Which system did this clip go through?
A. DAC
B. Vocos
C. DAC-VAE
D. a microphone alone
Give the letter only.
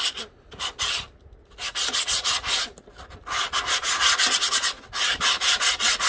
D